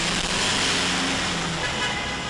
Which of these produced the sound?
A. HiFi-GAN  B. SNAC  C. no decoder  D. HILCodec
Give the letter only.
C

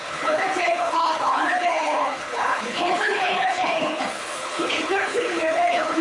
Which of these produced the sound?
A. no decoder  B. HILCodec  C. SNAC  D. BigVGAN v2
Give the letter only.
B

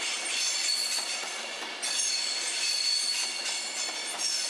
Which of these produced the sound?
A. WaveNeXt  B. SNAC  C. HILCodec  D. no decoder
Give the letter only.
D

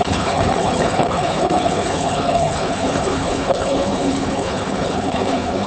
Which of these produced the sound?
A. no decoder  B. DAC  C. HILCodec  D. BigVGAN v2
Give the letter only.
C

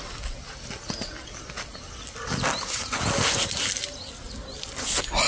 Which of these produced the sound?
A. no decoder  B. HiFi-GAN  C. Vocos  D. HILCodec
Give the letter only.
A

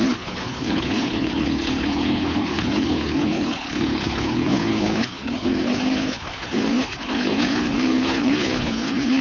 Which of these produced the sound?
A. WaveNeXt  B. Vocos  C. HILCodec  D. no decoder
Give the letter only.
C